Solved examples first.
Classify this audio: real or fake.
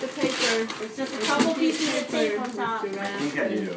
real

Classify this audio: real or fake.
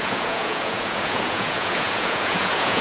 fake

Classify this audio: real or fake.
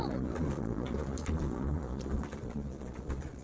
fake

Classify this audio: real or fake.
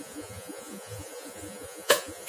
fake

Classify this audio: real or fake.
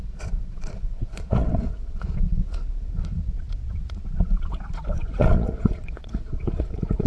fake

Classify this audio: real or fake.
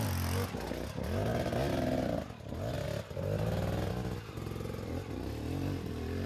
real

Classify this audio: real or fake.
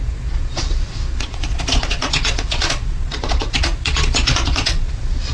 fake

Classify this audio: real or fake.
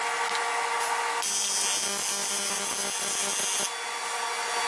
real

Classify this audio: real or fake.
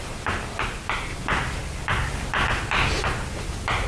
real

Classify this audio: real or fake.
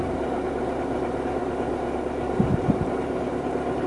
real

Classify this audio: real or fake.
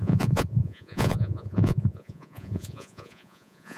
fake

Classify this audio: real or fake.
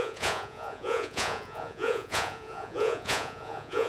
fake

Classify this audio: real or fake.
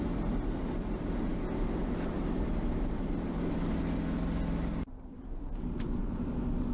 real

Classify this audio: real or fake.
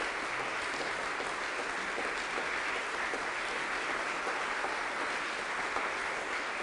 real